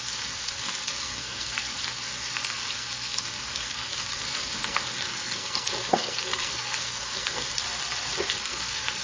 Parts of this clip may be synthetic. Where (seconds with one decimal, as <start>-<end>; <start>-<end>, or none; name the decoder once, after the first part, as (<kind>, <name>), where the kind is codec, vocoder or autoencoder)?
0.0-7.6 (codec, SNAC); 8.3-9.0